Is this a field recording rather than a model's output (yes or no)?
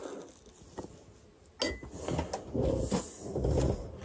yes